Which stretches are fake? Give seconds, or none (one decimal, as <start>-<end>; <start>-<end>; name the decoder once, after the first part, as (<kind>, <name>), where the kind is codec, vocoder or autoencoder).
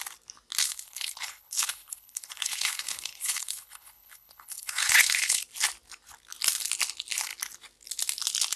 0.6-5.4 (codec, HILCodec)